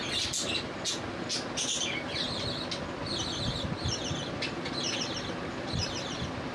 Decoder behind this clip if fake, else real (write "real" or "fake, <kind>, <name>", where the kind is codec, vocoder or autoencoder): real